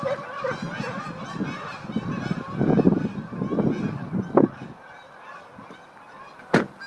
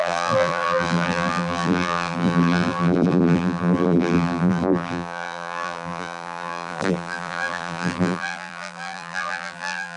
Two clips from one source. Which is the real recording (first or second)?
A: first